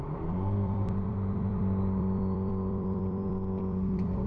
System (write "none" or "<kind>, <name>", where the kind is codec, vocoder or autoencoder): vocoder, BigVGAN v2